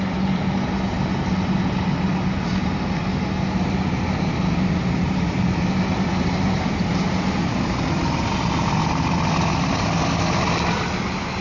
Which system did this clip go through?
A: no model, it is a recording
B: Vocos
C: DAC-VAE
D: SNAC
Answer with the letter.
A